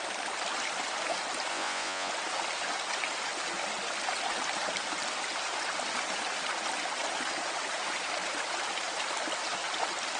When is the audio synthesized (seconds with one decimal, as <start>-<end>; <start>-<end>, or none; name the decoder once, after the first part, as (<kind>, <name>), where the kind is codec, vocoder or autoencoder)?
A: 1.5-2.1 (vocoder, Vocos)

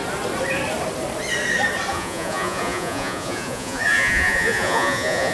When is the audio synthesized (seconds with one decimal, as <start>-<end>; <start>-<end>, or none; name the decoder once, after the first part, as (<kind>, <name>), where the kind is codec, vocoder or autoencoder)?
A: 1.9-5.3 (vocoder, Vocos)

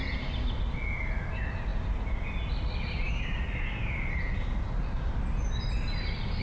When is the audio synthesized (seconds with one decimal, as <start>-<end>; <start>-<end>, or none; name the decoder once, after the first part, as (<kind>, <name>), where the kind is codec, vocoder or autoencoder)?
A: none

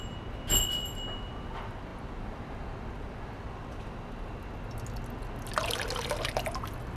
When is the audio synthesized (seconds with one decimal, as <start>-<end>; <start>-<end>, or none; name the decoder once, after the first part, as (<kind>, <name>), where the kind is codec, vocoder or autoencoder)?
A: none

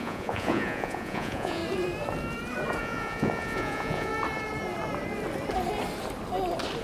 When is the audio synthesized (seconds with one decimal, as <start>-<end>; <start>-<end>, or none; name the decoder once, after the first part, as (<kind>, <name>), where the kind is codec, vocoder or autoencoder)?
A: 0.0-1.6 (vocoder, Vocos); 2.8-4.1

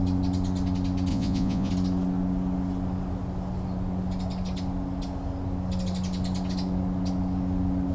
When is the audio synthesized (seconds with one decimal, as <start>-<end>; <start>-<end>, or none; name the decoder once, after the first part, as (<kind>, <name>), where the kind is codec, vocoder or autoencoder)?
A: 1.1-1.7 (vocoder, Vocos)

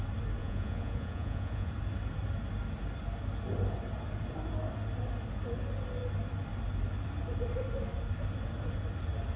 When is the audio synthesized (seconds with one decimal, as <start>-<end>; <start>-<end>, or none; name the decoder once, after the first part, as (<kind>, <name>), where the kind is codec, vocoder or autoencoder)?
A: 0.4-1.7 (vocoder, Vocos)

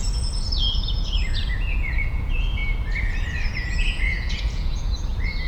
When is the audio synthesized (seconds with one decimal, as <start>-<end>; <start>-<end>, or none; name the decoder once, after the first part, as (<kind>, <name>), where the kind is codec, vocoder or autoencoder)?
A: 0.0-2.6 (vocoder, Vocos); 3.5-5.5